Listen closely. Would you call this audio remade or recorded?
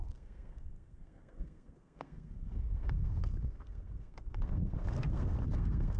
remade